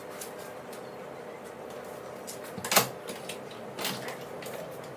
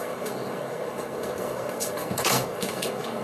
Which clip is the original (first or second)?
first